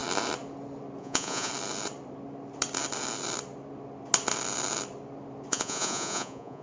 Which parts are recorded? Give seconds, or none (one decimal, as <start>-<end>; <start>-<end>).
0.0-1.0; 1.5-5.5